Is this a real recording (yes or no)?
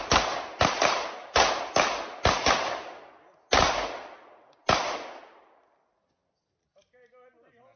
yes